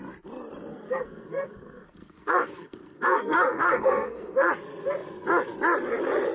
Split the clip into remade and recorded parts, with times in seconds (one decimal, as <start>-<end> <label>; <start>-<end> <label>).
0.0-0.7 recorded; 0.7-4.5 remade; 4.5-6.3 recorded